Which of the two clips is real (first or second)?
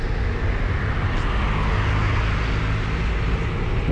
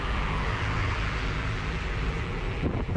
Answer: first